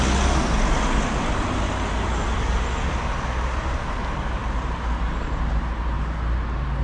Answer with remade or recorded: recorded